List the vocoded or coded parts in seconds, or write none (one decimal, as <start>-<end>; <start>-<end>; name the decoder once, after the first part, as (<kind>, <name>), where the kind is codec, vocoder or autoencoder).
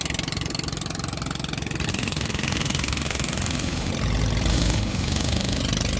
1.9-3.9 (autoencoder, DAC-VAE); 4.5-5.6